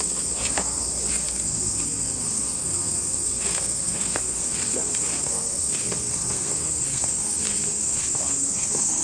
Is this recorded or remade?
remade